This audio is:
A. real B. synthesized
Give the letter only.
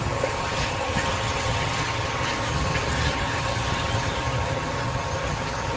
B